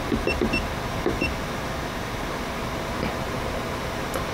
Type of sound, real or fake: real